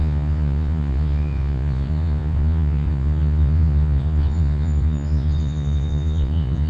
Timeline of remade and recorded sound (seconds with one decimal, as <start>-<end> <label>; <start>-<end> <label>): 0.0-6.7 remade